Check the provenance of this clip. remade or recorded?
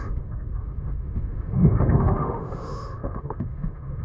remade